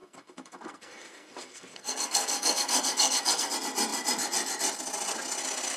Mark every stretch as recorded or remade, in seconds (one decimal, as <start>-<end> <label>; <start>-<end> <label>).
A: 0.0-3.5 remade; 3.5-5.8 recorded

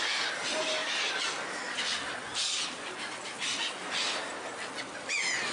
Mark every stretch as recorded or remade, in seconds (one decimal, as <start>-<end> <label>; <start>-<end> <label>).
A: 0.0-5.5 recorded

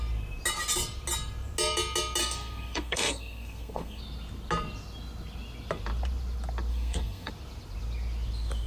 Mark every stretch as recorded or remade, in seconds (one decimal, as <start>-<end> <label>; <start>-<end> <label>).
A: 0.0-2.2 recorded; 2.2-4.0 remade; 4.0-6.7 recorded; 6.7-7.3 remade; 7.3-8.7 recorded

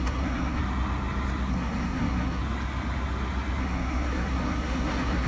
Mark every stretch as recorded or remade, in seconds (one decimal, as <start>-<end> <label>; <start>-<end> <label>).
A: 0.0-0.6 remade; 0.6-1.5 recorded; 1.5-2.4 remade; 2.4-3.6 recorded; 3.6-5.3 remade

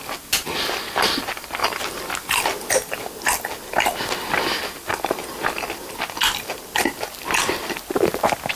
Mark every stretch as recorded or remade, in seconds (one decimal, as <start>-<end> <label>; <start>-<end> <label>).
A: 0.0-8.6 recorded

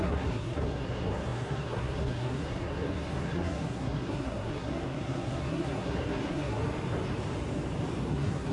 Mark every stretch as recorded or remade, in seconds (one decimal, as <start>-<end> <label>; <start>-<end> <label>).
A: 0.0-6.6 remade; 6.6-8.1 recorded; 8.1-8.5 remade

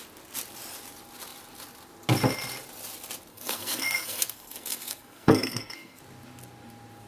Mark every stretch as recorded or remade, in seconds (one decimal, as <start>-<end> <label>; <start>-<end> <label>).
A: 0.0-3.3 recorded; 3.3-6.0 remade; 6.0-7.1 recorded